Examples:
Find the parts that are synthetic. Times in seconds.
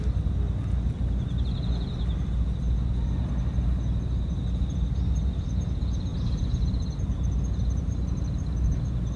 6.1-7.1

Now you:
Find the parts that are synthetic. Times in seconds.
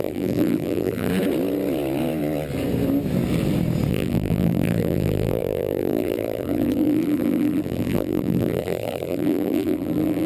0.0-1.1; 3.9-10.3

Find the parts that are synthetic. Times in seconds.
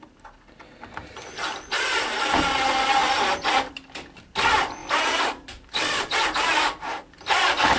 4.8-7.8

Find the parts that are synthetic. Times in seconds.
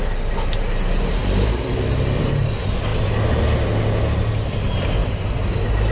1.2-2.3